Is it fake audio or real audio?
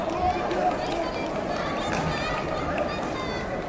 real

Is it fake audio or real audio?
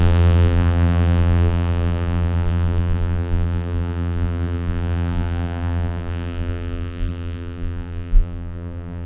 fake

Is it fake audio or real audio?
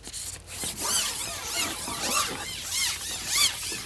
real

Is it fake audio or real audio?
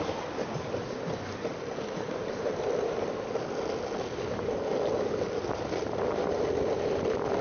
fake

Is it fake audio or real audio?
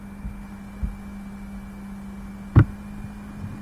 real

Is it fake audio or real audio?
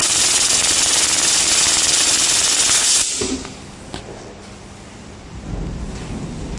real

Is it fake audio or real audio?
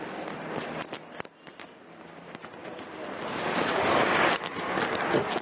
real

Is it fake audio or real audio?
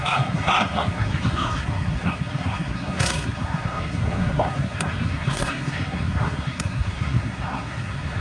fake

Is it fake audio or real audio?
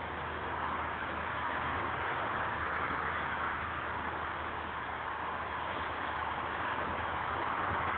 fake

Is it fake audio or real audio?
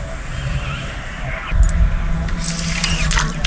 real